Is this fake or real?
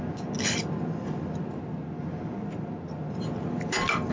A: real